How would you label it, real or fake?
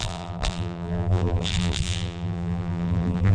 fake